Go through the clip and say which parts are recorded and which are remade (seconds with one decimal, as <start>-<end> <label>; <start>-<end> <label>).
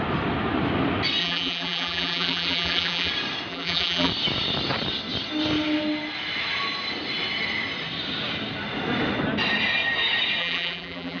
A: 0.0-1.2 recorded; 1.2-3.1 remade; 3.1-3.5 recorded; 3.5-4.1 remade; 4.1-10.4 recorded; 10.4-11.2 remade